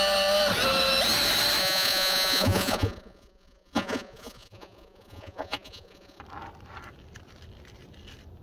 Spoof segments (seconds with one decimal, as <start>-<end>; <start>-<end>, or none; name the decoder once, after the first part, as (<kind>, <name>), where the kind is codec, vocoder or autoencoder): 1.6-6.2 (vocoder, Vocos)